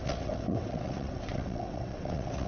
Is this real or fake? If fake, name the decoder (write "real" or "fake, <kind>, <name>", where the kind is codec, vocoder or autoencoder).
fake, vocoder, WaveNeXt